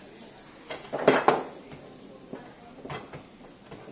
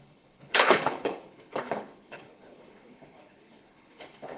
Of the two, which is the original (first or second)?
first